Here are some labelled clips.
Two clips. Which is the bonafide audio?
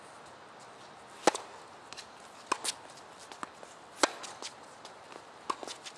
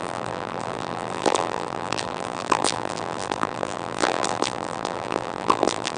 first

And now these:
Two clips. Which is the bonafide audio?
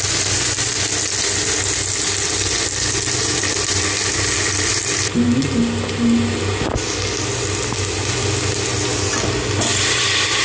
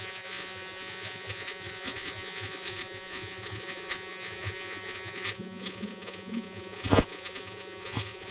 first